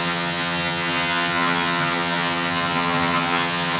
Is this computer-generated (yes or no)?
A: yes